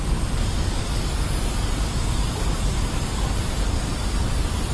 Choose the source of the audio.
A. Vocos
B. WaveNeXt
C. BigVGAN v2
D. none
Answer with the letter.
D